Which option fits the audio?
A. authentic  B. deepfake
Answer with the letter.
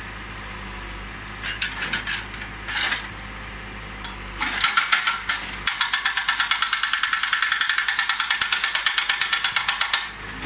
A